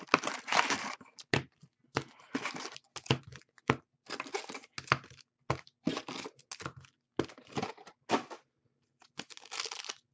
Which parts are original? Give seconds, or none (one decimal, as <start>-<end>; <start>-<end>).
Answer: 0.0-10.1